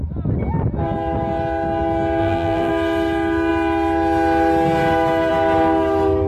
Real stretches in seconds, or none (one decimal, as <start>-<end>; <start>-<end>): 0.0-2.2; 2.7-6.3